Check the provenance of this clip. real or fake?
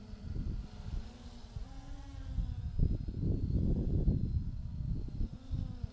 real